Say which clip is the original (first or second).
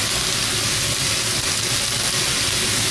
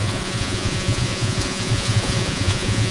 first